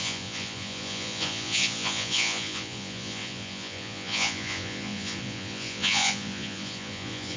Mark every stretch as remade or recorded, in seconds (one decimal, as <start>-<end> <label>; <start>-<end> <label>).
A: 0.0-7.4 remade